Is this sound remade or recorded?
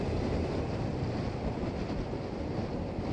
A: recorded